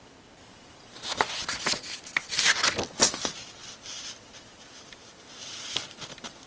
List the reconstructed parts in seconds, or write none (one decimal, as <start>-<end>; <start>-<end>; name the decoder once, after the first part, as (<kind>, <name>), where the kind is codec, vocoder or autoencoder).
3.6-5.8 (vocoder, BigVGAN v2)